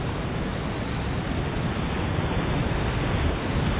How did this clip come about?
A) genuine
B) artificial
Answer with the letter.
A